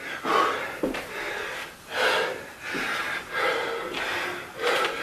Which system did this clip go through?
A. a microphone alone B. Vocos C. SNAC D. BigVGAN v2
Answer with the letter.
A